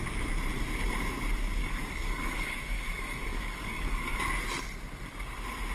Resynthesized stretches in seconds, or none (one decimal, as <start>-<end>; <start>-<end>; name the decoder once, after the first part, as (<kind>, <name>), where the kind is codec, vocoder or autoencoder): 1.6-4.2 (codec, DAC)

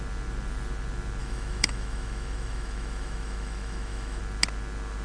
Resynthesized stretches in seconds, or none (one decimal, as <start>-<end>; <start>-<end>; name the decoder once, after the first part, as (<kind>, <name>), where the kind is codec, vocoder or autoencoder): 1.2-4.2 (autoencoder, DAC-VAE)

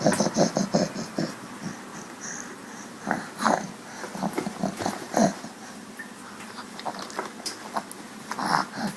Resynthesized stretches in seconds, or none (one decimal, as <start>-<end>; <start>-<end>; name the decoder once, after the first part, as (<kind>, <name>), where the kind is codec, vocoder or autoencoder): none

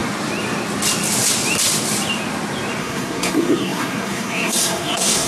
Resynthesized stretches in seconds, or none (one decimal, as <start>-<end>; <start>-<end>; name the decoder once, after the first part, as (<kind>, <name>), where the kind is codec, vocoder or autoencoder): 2.8-5.3 (codec, SNAC)

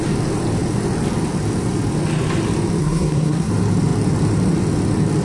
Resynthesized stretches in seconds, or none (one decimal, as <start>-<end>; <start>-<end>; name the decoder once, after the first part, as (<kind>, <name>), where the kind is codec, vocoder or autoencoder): 2.8-3.5 (codec, SNAC)